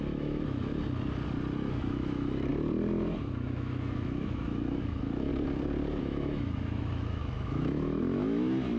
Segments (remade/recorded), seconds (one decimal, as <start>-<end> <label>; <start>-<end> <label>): 0.0-0.7 remade; 0.7-1.7 recorded; 1.7-2.5 remade; 2.5-3.2 recorded; 3.2-5.3 remade; 5.3-6.0 recorded; 6.0-8.8 remade